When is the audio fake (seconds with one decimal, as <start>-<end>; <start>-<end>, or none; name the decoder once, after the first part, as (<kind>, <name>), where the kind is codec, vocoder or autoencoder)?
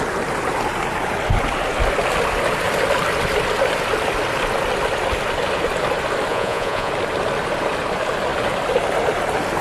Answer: 6.3-6.9 (vocoder, Vocos)